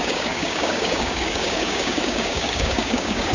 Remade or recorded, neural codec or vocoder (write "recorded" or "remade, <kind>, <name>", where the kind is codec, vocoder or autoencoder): remade, codec, DAC